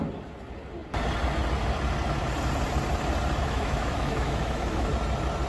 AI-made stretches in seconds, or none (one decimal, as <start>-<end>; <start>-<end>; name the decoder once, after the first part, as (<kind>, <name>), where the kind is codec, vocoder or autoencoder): 3.4-4.9 (autoencoder, DAC-VAE)